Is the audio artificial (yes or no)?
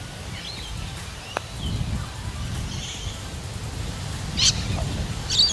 no